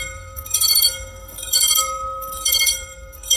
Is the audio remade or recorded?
remade